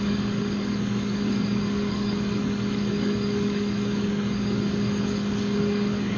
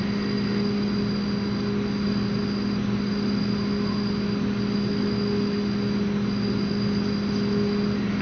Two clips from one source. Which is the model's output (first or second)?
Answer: first